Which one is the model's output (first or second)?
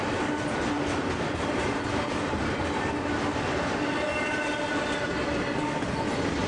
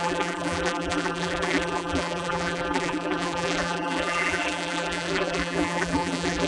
second